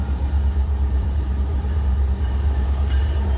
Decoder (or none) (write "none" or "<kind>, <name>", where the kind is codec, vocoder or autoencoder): vocoder, BigVGAN v2